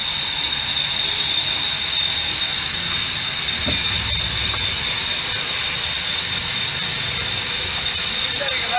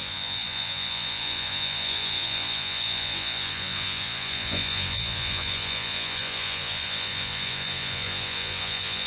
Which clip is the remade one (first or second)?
second